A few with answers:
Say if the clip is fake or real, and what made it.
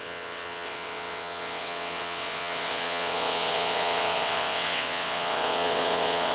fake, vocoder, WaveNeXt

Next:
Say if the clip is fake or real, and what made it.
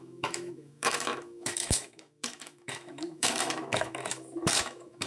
fake, autoencoder, DAC-VAE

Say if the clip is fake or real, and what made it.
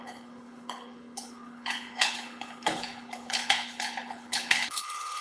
fake, codec, HILCodec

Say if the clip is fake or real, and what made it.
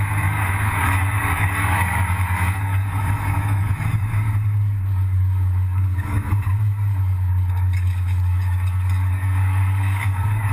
fake, codec, DAC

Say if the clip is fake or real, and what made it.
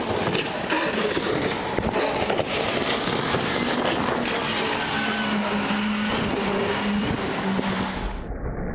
real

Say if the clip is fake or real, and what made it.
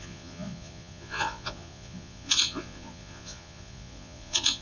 fake, vocoder, Vocos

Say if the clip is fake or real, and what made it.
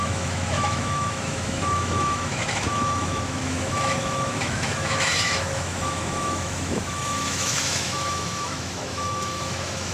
fake, autoencoder, DAC-VAE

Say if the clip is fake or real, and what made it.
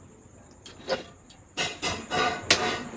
real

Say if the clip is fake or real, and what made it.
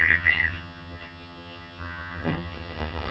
fake, vocoder, HiFi-GAN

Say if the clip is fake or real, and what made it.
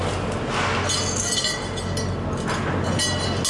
real